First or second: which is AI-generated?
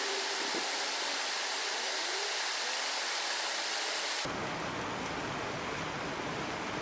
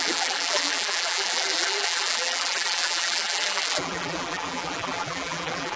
second